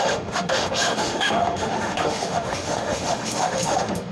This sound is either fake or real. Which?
fake